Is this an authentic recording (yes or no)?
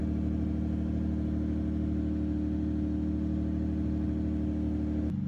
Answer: yes